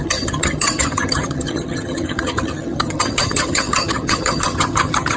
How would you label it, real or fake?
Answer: fake